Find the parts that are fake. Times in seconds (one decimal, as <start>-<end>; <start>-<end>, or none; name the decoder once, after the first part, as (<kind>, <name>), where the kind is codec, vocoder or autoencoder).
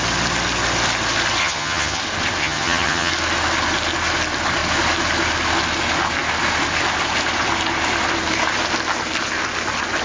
1.4-2.0 (vocoder, HiFi-GAN); 2.4-3.1